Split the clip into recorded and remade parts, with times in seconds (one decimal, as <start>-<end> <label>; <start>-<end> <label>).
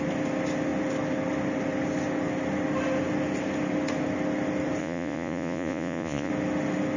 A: 0.0-4.8 recorded; 4.8-6.3 remade; 6.3-7.0 recorded